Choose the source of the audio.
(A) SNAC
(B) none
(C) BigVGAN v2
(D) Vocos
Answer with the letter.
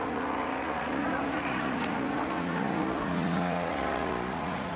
D